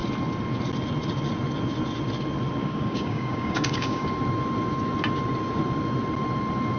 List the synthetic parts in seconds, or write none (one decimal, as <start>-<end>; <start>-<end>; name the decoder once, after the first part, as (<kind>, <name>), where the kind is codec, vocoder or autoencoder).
2.6-4.1 (codec, DAC)